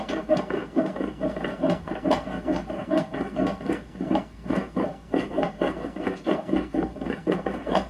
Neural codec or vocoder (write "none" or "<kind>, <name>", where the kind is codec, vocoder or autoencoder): codec, SNAC